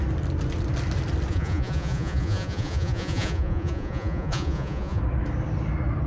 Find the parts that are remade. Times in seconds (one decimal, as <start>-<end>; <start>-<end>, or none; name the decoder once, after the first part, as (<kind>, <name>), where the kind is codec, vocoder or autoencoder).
1.3-5.0 (vocoder, Vocos)